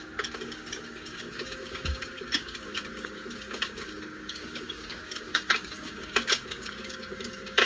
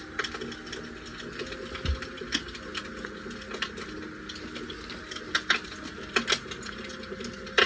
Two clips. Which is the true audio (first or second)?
second